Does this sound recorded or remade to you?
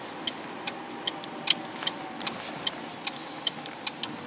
recorded